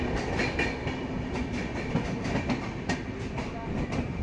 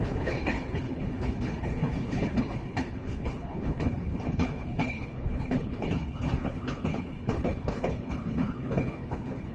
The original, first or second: first